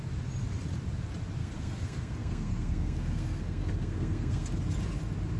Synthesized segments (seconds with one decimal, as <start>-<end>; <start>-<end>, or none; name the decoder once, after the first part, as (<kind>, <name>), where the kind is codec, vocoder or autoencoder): 1.4-4.6 (codec, SNAC)